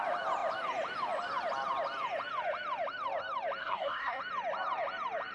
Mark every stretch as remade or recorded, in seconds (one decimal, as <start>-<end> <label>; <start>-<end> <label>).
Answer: 0.0-3.6 recorded; 3.6-4.2 remade; 4.2-5.3 recorded